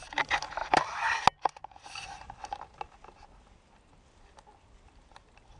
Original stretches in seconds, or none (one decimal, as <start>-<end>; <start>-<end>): 0.0-5.6